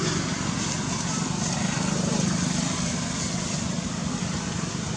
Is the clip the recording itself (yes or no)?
yes